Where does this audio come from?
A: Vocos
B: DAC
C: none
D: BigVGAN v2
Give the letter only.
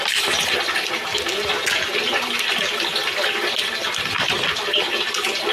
D